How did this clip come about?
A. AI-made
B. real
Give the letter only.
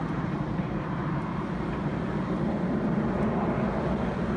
A